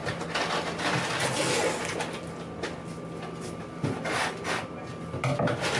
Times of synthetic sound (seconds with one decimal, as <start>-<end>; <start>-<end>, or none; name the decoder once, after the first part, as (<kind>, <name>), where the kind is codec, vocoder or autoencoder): none